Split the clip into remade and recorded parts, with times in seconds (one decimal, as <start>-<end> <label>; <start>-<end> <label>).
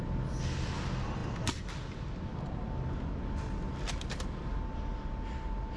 0.0-5.8 recorded